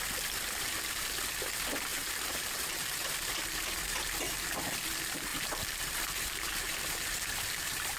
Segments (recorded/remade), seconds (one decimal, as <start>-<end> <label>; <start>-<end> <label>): 0.0-1.9 recorded; 1.9-4.1 remade; 4.1-5.3 recorded; 5.3-8.0 remade